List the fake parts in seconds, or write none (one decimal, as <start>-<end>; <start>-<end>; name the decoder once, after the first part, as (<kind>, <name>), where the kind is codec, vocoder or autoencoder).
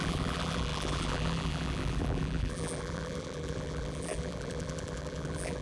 0.0-5.6 (vocoder, BigVGAN v2)